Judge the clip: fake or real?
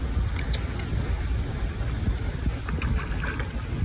real